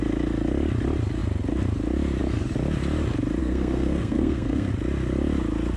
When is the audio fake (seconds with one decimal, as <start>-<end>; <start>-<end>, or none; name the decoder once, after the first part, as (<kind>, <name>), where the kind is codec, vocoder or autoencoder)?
3.4-4.7 (codec, SNAC)